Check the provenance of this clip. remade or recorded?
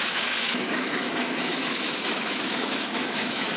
remade